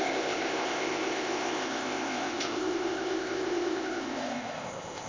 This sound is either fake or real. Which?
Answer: fake